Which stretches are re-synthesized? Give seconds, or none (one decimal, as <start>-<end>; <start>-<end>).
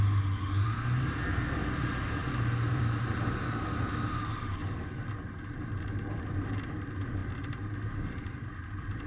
0.0-9.1